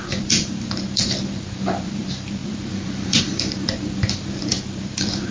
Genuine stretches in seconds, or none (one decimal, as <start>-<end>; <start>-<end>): none